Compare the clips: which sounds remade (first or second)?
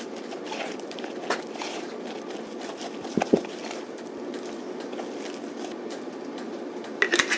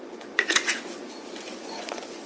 second